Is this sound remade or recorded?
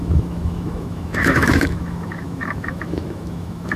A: remade